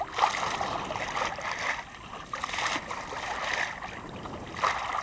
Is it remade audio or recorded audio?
recorded